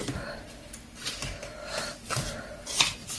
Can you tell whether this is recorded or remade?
recorded